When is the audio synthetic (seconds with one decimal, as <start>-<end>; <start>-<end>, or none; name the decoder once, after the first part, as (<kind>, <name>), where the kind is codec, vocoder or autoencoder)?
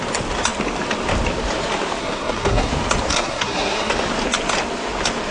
2.0-2.7 (codec, SNAC); 3.1-3.9